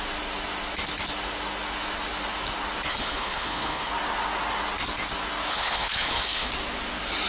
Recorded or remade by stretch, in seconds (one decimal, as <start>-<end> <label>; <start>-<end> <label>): 0.0-2.9 recorded; 2.9-3.9 remade; 3.9-5.5 recorded; 5.5-6.5 remade; 6.5-7.3 recorded